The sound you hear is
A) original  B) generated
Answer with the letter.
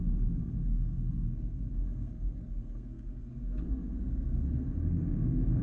B